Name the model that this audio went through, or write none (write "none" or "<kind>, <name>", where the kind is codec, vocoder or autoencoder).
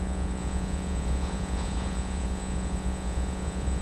vocoder, Vocos